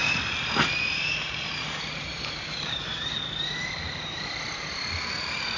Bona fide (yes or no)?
no